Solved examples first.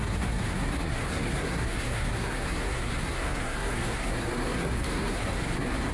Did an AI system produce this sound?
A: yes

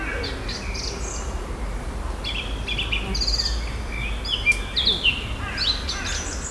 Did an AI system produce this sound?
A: no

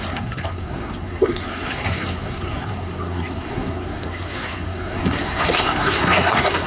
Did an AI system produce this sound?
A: yes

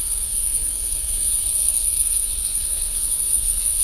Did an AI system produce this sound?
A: yes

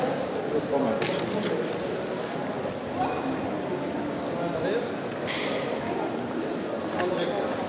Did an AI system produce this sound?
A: no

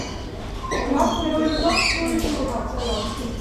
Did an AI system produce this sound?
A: no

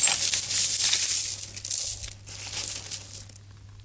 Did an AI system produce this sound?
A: no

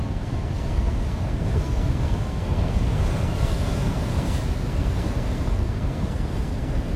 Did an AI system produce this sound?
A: yes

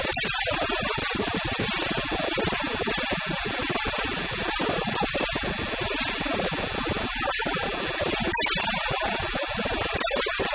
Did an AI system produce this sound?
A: no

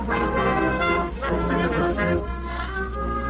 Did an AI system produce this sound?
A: yes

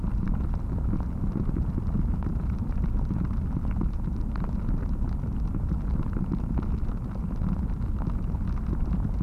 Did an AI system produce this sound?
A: no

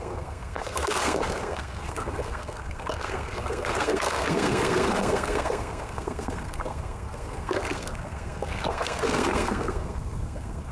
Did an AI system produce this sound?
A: yes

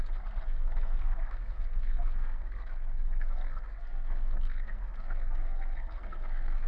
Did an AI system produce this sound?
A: yes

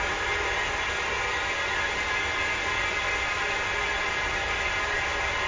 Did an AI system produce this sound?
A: no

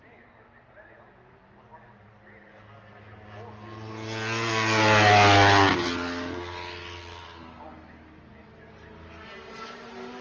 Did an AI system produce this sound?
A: no